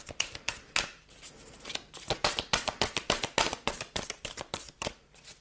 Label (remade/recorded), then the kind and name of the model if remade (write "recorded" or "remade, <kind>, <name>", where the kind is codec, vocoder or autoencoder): remade, vocoder, BigVGAN v2